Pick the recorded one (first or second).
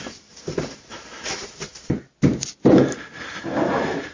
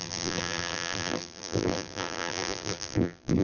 first